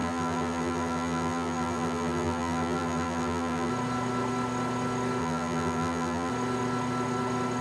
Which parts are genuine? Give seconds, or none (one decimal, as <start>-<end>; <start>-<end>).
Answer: 3.7-5.2; 6.3-7.6